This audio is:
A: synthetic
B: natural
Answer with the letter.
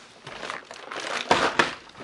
B